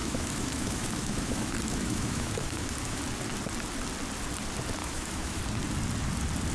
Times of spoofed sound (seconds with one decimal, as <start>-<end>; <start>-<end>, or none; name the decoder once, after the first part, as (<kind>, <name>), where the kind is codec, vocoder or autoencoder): 0.0-3.0 (autoencoder, DAC-VAE); 4.8-5.4